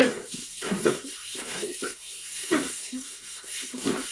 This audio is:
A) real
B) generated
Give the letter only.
B